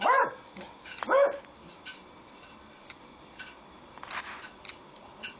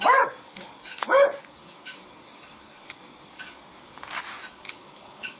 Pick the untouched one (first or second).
first